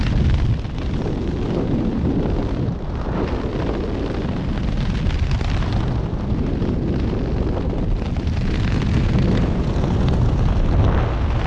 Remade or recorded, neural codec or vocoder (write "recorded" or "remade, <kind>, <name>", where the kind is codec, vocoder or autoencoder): recorded